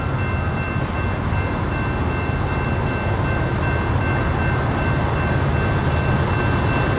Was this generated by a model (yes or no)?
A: no